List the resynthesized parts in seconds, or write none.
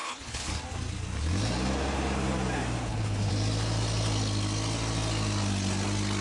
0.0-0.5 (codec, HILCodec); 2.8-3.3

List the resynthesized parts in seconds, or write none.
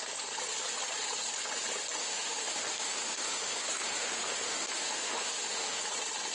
2.0-5.8 (autoencoder, DAC-VAE)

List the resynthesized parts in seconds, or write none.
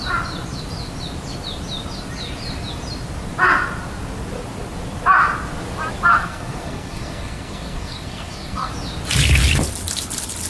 6.1-8.7 (codec, SNAC)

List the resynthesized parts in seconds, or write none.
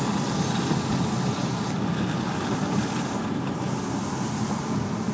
1.4-4.5 (vocoder, BigVGAN v2)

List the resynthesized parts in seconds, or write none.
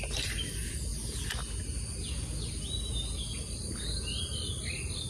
none